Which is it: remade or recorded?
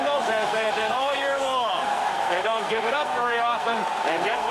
remade